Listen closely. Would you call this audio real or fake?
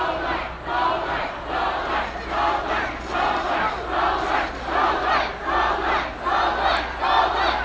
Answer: real